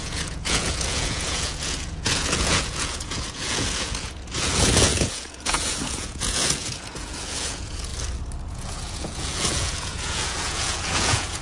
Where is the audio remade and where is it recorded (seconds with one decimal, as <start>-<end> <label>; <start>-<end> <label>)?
0.0-7.9 remade; 7.9-8.5 recorded; 8.5-11.4 remade